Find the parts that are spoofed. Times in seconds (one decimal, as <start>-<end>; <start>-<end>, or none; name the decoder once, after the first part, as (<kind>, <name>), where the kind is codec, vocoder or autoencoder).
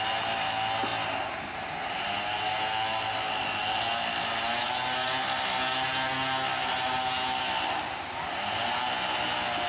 none